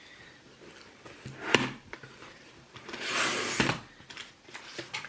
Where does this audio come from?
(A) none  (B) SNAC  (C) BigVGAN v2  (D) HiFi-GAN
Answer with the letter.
C